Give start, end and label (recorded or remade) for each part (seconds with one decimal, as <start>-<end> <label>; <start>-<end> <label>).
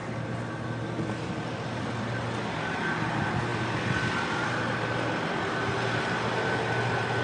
0.0-7.2 recorded